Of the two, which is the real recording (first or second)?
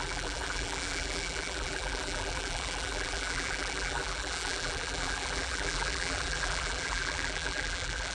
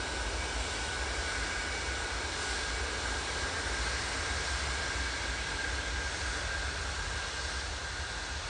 second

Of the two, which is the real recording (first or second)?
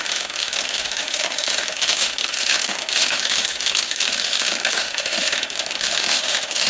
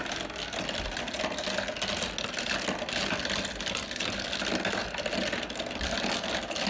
second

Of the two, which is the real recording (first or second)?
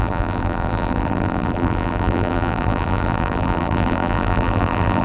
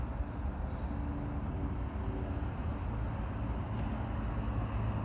second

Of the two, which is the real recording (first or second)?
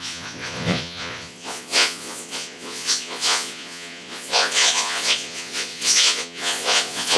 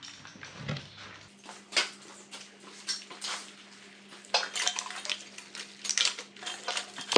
second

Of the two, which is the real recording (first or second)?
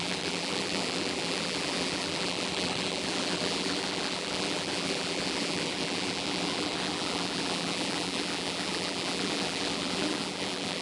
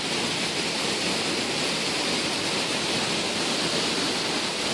second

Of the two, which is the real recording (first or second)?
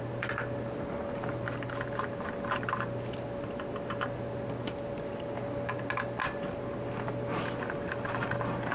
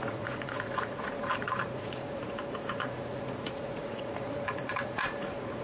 first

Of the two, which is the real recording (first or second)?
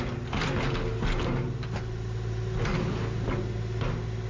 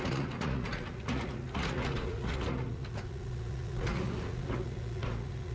first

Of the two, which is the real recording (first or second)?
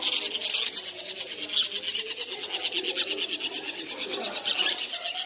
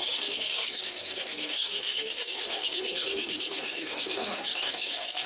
first